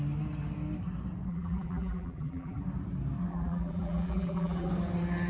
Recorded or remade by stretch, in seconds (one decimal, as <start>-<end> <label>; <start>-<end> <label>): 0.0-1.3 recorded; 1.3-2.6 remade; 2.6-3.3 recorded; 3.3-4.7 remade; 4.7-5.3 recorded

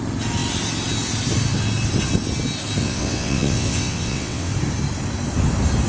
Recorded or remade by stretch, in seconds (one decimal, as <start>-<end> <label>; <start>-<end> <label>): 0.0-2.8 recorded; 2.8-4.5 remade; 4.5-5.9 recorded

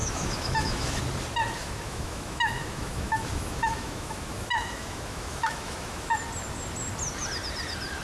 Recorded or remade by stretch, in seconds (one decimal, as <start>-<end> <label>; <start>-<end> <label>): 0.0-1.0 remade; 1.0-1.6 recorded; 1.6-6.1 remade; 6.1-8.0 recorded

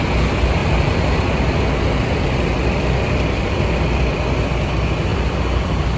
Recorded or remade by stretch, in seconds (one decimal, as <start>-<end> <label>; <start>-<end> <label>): 0.0-0.6 recorded; 0.6-4.2 remade; 4.2-5.1 recorded; 5.1-6.0 remade